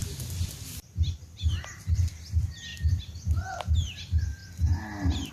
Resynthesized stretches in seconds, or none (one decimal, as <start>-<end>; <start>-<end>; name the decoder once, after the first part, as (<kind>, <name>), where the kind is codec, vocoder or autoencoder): 0.0-2.2 (vocoder, BigVGAN v2); 2.7-3.6